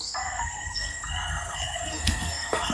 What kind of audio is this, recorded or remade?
remade